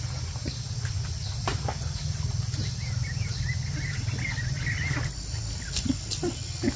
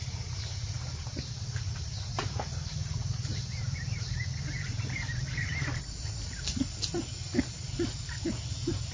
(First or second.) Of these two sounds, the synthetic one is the second